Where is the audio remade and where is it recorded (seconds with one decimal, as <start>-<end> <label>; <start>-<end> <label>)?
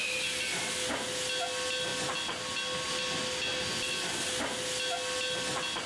0.0-5.9 recorded